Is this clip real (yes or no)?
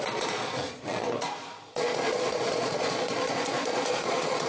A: no